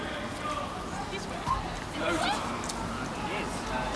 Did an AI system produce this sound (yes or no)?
no